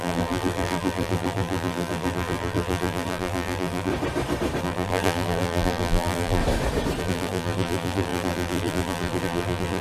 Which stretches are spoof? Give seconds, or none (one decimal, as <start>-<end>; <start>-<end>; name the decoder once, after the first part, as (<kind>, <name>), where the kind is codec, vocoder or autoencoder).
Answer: 0.0-3.9 (vocoder, BigVGAN v2); 4.6-6.4; 7.0-9.8